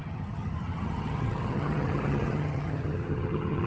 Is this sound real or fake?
fake